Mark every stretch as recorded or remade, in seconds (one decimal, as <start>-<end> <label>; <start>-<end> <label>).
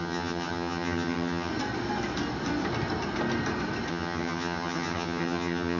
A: 0.0-1.5 remade; 1.5-3.9 recorded; 3.9-5.8 remade